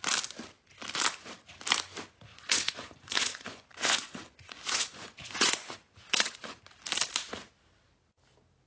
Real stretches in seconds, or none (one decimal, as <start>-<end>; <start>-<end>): 0.0-2.3; 6.6-8.7